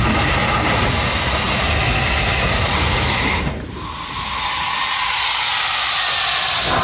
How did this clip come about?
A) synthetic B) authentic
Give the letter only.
B